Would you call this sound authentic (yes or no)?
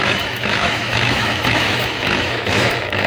no